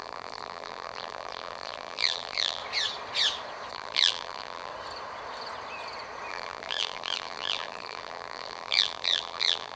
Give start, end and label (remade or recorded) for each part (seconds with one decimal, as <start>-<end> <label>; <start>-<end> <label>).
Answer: 0.0-2.6 remade; 2.6-3.7 recorded; 3.7-4.7 remade; 4.7-6.3 recorded; 6.3-9.8 remade